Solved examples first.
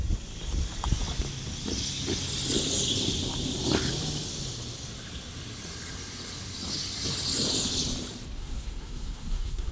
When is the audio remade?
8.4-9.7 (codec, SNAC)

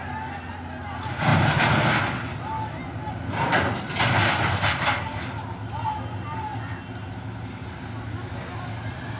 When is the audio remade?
none

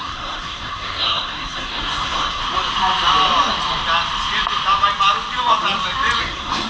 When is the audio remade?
0.0-2.4 (codec, SNAC); 6.2-6.7

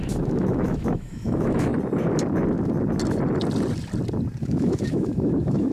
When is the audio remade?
0.0-1.7 (autoencoder, DAC-VAE); 4.4-5.7

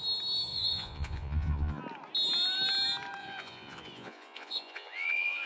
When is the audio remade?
0.5-1.8 (vocoder, Vocos); 3.2-5.5

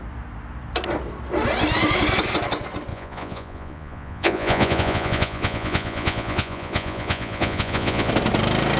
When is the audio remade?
2.9-8.1 (vocoder, Vocos)

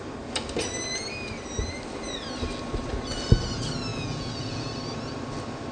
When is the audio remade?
3.9-4.7 (vocoder, Vocos)

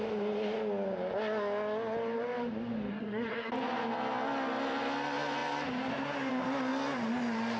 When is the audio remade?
2.9-3.5 (codec, SNAC)